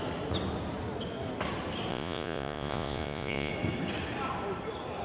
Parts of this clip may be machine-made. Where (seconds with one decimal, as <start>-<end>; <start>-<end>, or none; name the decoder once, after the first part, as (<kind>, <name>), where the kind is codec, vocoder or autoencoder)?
1.9-3.5 (vocoder, Vocos)